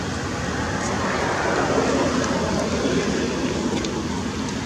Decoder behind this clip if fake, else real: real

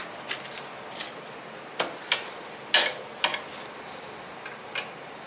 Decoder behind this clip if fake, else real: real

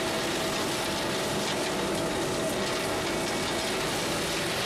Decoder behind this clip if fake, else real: real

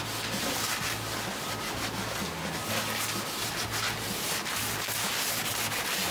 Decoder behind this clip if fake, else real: real